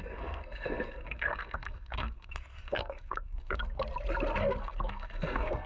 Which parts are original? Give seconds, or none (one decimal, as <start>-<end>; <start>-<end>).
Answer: 3.6-4.6